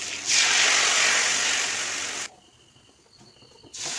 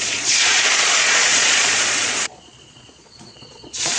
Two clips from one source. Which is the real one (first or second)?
first